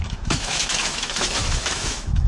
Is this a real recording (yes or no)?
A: no